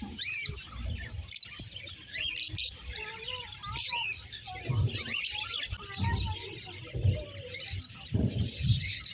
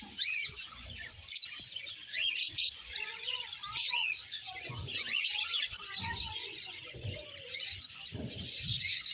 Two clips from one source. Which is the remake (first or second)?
second